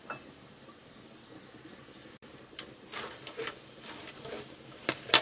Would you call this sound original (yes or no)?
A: yes